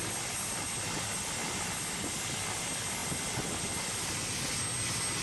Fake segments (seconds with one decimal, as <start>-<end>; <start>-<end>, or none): none